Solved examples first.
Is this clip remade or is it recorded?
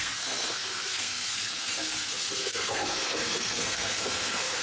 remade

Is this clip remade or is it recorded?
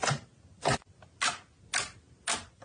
recorded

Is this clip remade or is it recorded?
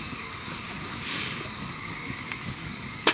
remade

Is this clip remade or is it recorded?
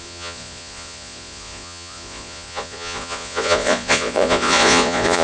remade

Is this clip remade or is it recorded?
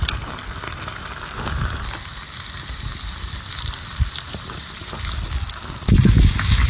recorded